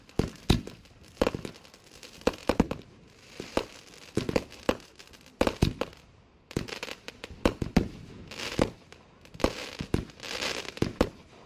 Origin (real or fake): real